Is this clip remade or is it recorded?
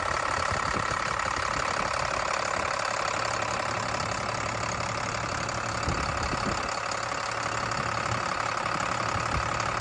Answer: recorded